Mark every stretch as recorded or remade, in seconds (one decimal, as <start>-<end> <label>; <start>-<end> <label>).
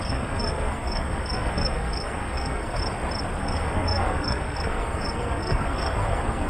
0.0-2.8 remade; 2.8-3.4 recorded; 3.4-6.5 remade